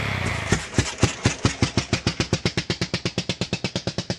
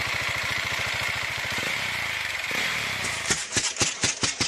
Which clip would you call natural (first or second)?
first